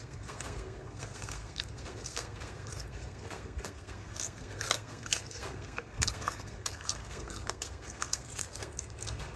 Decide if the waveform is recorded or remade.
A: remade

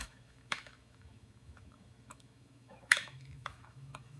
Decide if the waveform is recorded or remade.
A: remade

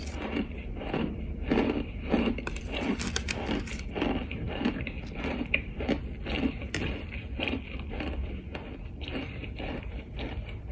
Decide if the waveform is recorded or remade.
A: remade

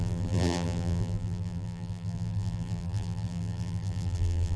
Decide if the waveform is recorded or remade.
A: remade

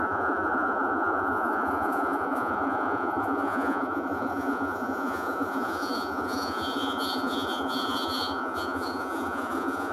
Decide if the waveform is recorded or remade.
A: remade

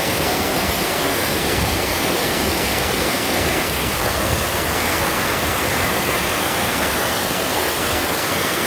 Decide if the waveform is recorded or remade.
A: remade